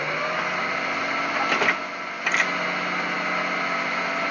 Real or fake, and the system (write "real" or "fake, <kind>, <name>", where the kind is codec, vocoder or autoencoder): real